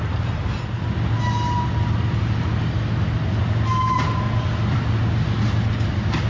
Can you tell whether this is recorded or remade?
recorded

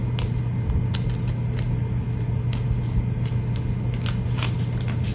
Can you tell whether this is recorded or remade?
recorded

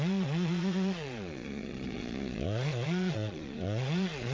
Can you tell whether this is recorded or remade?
remade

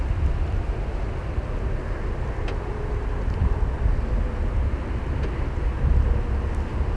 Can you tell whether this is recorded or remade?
recorded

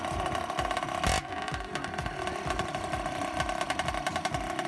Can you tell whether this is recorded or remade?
recorded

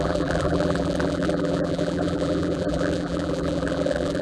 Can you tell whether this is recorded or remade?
remade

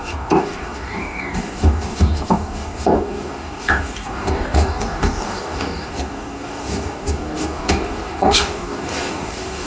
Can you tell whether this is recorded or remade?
remade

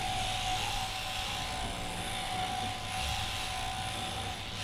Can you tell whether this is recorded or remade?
recorded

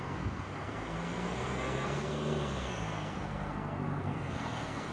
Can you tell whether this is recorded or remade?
remade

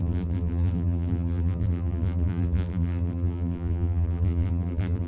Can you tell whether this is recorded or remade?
remade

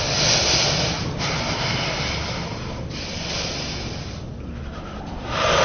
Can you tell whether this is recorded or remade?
recorded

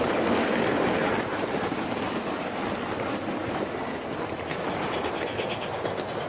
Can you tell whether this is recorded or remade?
recorded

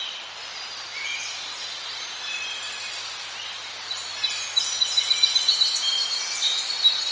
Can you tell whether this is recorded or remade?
recorded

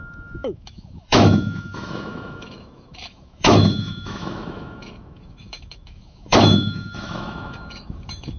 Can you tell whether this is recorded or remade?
remade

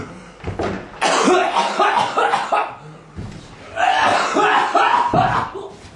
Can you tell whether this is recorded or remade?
recorded